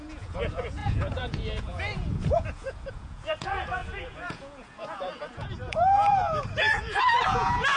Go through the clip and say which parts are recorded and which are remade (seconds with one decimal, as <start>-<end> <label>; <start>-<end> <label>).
0.0-7.8 remade